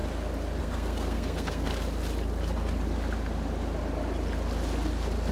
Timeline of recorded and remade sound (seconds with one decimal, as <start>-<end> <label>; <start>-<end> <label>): 0.0-0.6 recorded; 0.6-1.7 remade; 1.7-5.3 recorded